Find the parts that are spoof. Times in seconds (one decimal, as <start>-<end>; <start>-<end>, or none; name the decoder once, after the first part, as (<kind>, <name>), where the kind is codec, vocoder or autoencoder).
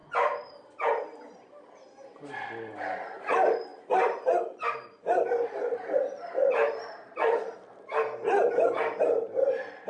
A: 3.7-7.4 (vocoder, BigVGAN v2)